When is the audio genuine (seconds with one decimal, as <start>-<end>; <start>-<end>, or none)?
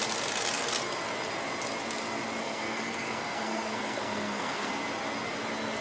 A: 0.0-2.4; 4.7-5.8